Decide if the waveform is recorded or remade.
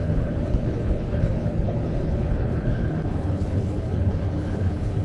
remade